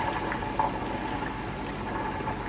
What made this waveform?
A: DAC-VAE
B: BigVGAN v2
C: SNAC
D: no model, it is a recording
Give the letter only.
D